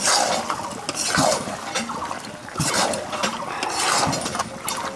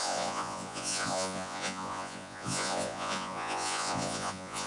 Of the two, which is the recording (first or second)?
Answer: first